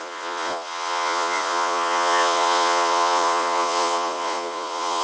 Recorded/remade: remade